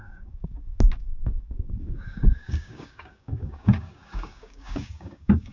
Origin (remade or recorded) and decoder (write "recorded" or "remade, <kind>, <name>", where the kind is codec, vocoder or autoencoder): remade, codec, DAC